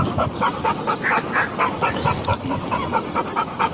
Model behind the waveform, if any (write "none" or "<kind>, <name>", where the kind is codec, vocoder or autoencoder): none